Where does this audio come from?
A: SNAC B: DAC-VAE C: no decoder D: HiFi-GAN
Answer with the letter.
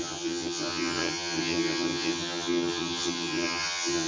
D